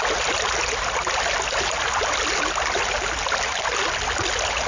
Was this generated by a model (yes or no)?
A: no